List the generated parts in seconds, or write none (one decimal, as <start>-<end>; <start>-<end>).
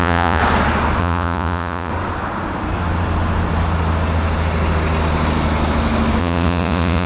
0.0-0.4; 1.0-1.9; 6.2-7.1